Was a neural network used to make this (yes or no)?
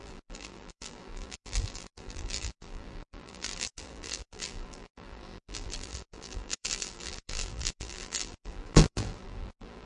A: yes